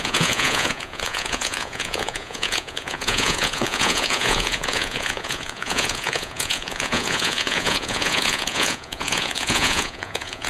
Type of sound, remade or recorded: remade